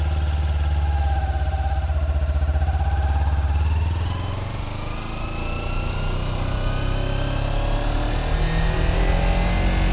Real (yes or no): yes